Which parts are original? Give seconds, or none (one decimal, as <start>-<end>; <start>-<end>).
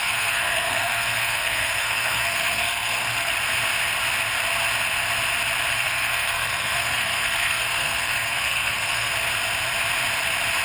3.3-5.7; 9.1-10.6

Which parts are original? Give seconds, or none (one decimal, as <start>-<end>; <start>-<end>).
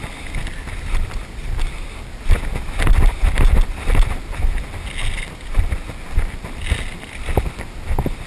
0.0-8.3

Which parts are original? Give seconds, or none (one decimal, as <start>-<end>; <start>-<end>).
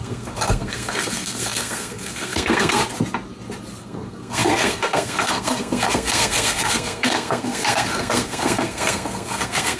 2.8-3.8